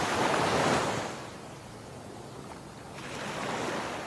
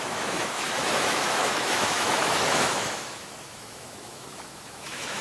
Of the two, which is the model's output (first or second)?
second